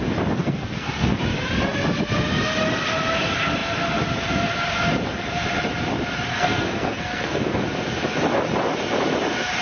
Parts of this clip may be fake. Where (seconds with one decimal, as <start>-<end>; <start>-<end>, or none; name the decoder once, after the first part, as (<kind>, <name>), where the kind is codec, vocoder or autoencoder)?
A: 0.4-1.2 (codec, SNAC); 6.3-7.6